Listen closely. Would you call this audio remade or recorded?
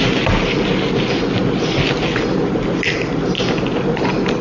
recorded